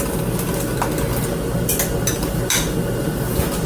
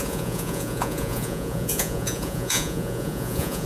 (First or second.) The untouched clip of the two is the first